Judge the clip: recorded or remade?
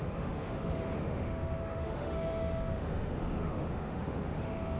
remade